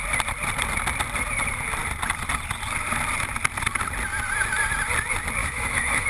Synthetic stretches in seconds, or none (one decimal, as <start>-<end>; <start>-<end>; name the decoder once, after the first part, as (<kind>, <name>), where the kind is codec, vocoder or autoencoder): 5.4-6.1 (autoencoder, DAC-VAE)